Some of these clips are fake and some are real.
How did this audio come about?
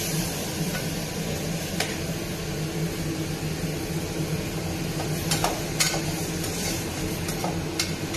real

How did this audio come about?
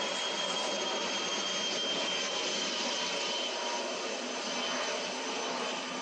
real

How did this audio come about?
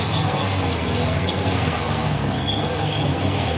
fake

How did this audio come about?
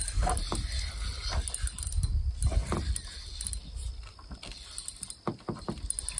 real